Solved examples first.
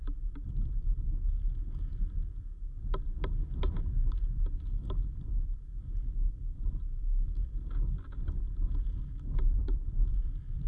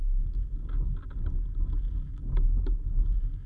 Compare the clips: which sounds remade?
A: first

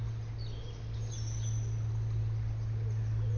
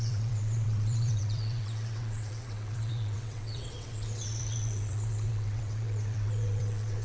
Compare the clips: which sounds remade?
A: second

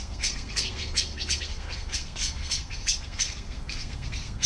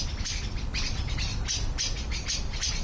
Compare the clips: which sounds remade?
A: first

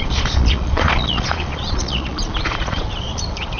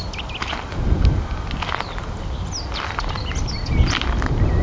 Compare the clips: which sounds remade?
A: first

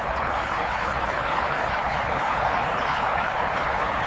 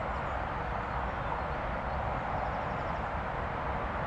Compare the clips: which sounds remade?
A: first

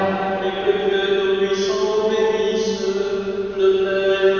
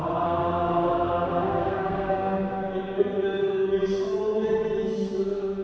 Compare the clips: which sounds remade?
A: second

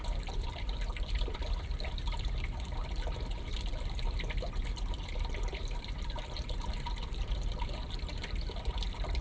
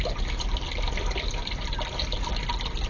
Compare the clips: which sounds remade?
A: first